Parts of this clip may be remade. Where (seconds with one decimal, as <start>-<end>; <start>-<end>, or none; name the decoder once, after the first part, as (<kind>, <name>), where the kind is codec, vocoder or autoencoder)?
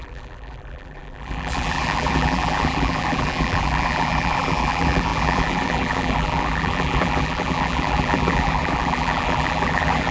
0.0-10.1 (vocoder, BigVGAN v2)